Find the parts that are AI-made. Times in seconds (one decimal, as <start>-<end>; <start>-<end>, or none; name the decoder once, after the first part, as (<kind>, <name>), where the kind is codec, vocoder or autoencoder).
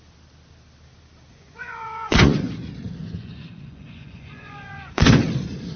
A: 1.3-2.5 (vocoder, Vocos); 3.0-5.2